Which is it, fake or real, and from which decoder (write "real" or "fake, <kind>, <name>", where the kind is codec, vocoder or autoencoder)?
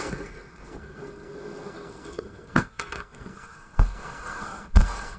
fake, codec, SNAC